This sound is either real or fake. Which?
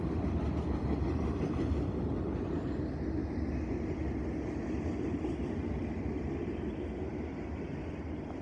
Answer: real